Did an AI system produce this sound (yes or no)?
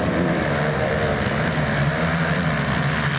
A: no